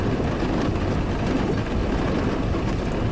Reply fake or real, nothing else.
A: real